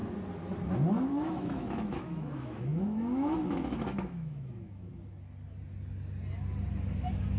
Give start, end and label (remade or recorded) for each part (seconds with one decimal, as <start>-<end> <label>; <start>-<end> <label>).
0.0-1.1 recorded; 1.1-4.9 remade; 4.9-7.4 recorded